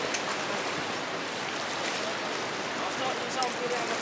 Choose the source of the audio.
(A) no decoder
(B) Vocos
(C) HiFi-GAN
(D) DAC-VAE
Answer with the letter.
A